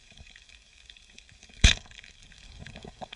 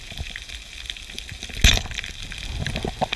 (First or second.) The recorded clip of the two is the second